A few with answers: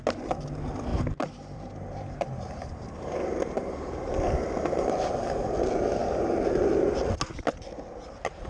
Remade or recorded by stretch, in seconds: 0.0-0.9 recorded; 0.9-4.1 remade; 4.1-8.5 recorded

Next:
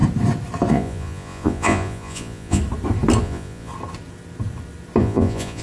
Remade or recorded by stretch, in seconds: 0.0-0.7 recorded; 0.7-2.6 remade; 2.6-3.2 recorded; 3.2-3.7 remade; 3.7-5.0 recorded; 5.0-5.6 remade